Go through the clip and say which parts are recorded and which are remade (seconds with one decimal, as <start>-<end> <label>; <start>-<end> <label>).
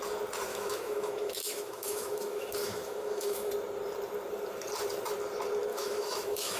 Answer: 0.0-0.5 recorded; 0.5-3.5 remade; 3.5-5.7 recorded; 5.7-6.6 remade